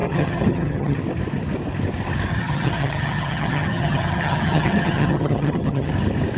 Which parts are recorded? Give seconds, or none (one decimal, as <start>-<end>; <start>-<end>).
1.0-2.3; 5.9-6.4